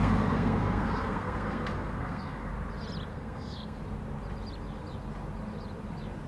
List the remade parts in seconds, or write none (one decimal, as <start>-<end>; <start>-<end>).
0.0-2.5; 3.1-3.8